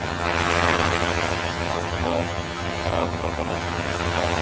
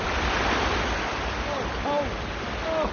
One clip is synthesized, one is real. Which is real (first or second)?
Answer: second